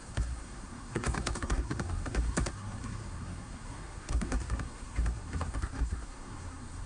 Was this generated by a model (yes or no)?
yes